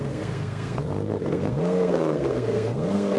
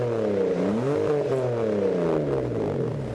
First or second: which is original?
second